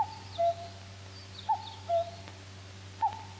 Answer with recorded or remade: recorded